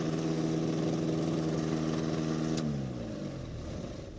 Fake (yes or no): no